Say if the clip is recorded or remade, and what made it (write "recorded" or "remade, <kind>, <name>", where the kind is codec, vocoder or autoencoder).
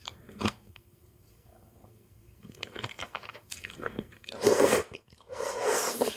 remade, codec, SNAC